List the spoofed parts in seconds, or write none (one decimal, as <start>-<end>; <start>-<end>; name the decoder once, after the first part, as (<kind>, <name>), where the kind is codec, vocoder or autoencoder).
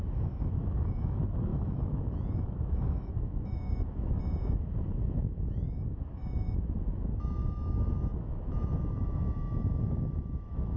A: 0.0-10.8 (autoencoder, DAC-VAE)